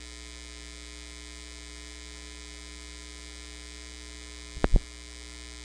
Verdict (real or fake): real